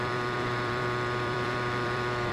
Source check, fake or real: fake